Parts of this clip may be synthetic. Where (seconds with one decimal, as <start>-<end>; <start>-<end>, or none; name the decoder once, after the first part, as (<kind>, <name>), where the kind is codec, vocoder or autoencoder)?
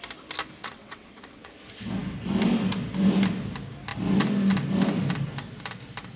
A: 0.6-1.5 (vocoder, WaveNeXt)